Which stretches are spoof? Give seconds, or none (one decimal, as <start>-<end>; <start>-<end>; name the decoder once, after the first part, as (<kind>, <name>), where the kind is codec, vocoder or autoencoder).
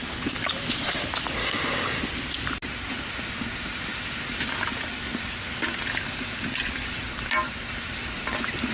1.4-2.0 (codec, DAC)